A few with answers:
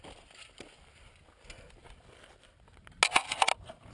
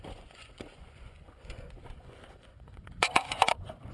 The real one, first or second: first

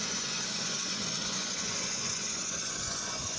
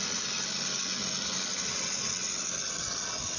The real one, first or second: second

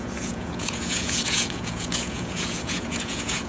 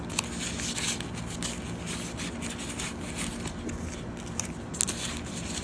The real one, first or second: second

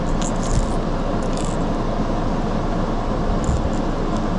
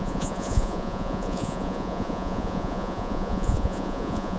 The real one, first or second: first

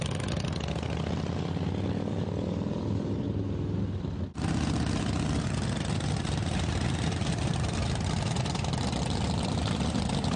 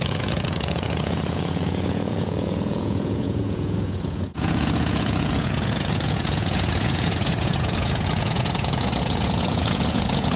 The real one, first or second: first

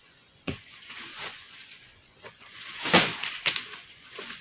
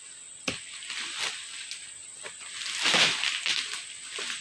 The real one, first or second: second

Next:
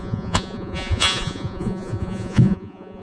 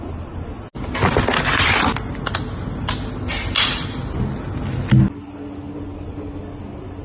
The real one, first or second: second